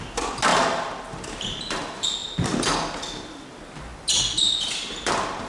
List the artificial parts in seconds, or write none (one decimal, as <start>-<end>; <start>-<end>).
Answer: none